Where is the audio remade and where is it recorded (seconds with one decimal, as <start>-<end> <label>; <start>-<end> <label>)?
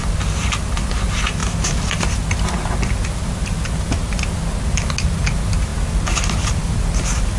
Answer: 0.0-7.4 recorded